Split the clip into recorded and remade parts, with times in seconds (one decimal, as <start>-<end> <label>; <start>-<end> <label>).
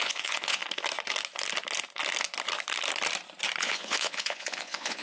0.0-0.6 remade; 0.6-3.6 recorded; 3.6-5.0 remade